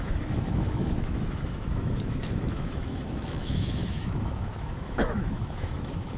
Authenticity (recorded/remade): remade